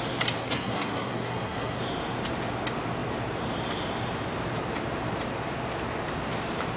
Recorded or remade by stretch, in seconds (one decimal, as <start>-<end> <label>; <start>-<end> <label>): 0.0-0.4 recorded; 0.4-1.8 remade; 1.8-6.8 recorded